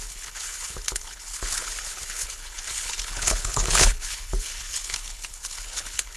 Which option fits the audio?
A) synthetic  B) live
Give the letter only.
A